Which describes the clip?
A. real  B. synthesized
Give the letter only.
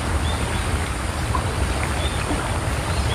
A